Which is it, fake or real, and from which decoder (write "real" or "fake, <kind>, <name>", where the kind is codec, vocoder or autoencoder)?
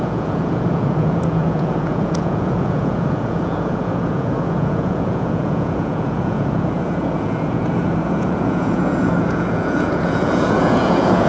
fake, vocoder, Vocos